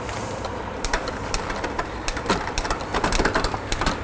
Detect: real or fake fake